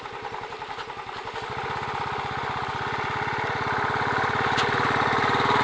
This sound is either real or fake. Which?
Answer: real